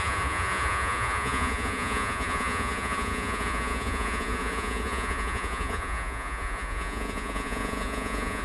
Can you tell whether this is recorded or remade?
remade